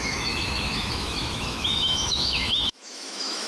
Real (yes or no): no